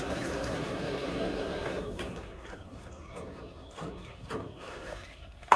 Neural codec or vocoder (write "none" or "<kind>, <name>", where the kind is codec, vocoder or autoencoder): codec, SNAC